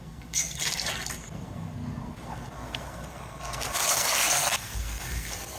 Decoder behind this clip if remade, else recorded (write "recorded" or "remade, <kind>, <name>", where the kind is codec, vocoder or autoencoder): remade, codec, SNAC